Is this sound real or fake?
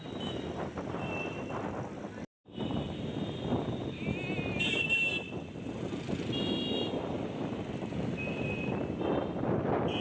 real